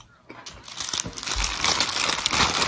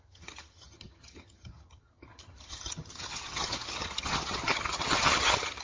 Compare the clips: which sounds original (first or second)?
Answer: first